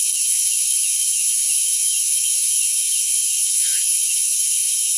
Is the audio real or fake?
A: fake